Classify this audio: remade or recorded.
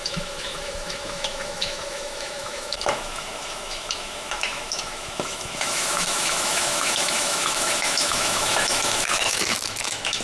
remade